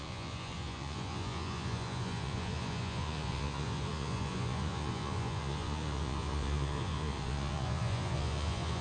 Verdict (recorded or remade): remade